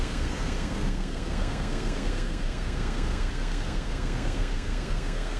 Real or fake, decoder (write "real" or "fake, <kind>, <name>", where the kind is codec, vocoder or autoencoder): fake, codec, SNAC